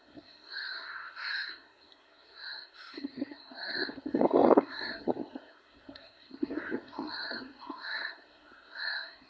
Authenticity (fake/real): fake